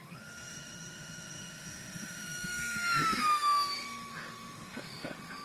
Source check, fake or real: fake